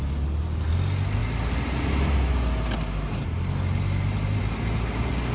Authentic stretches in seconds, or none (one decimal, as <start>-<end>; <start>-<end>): 0.0-5.3